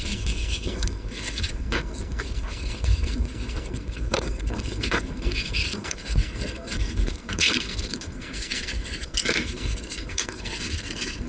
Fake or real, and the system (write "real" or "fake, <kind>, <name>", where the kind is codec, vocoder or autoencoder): fake, codec, SNAC